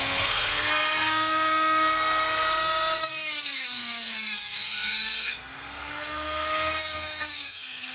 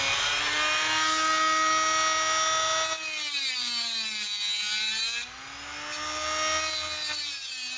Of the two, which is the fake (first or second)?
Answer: first